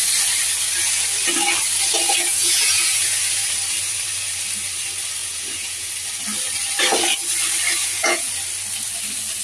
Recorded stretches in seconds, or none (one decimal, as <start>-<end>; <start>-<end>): 0.0-2.3; 3.2-5.2; 5.9-7.8; 8.3-9.4